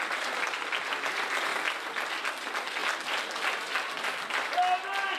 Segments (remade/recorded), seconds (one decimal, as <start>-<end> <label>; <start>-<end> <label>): 0.0-5.2 recorded